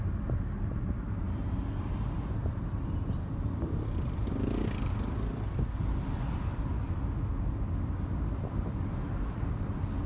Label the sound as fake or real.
real